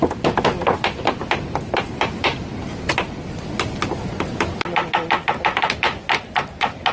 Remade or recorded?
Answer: recorded